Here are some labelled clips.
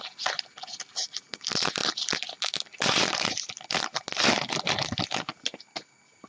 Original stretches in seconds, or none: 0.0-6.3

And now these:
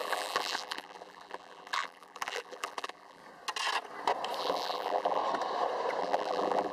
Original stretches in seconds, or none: 3.2-4.4; 5.2-6.0